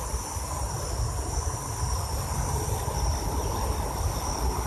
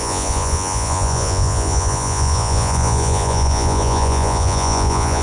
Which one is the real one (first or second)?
first